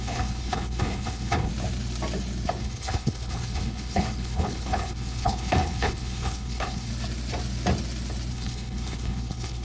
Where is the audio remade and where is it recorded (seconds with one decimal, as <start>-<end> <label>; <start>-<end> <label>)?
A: 0.0-1.5 remade; 1.5-2.6 recorded; 2.6-6.9 remade; 6.9-8.3 recorded; 8.3-9.6 remade